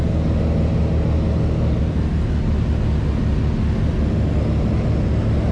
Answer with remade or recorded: recorded